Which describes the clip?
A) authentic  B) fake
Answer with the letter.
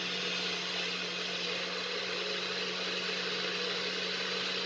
A